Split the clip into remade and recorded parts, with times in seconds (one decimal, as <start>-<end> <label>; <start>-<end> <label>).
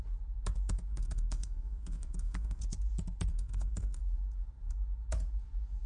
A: 0.0-0.9 recorded; 0.9-2.6 remade; 2.6-3.3 recorded; 3.3-4.0 remade; 4.0-5.9 recorded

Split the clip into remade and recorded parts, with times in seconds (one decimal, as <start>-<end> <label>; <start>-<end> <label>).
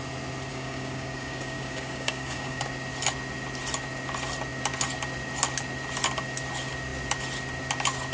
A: 0.0-0.5 recorded; 0.5-2.6 remade; 2.6-8.1 recorded